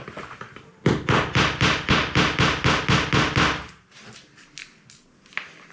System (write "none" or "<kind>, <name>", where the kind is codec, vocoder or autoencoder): none